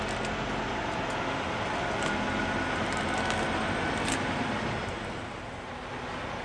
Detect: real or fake real